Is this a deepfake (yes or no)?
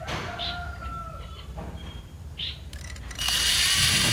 yes